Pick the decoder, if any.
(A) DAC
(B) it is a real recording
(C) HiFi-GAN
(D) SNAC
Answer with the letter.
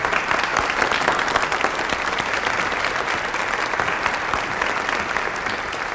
B